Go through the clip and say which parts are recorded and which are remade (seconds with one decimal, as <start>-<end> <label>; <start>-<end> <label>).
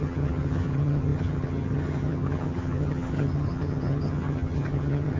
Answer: 0.0-5.2 remade